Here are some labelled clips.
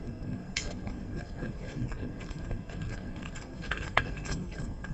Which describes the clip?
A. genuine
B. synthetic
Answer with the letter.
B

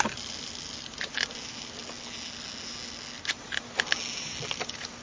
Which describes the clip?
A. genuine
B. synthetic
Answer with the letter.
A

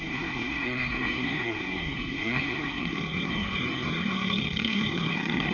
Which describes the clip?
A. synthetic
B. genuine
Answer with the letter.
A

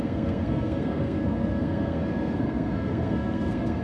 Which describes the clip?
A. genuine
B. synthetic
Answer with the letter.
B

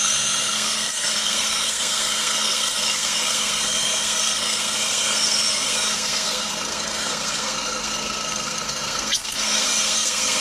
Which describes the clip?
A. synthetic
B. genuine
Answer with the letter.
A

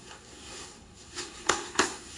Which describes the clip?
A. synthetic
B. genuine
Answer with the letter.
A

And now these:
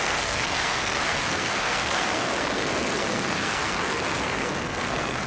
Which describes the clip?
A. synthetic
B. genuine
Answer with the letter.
A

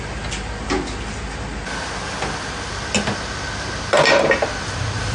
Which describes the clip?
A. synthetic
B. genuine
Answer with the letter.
B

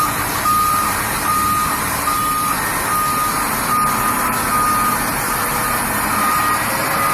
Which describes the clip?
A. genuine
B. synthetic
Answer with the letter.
A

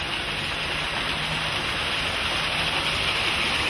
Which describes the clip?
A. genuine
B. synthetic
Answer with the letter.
A